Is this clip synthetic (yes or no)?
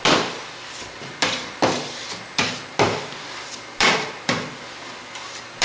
yes